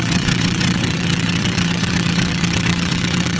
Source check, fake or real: fake